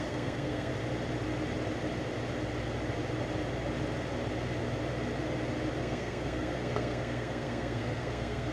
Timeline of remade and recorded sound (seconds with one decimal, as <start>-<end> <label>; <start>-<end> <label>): 0.0-0.7 remade; 0.7-5.8 recorded; 5.8-8.5 remade